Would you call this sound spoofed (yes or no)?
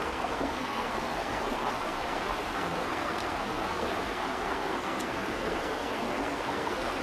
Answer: yes